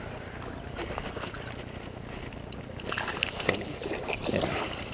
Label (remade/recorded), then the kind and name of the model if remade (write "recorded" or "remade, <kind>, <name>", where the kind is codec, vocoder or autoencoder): recorded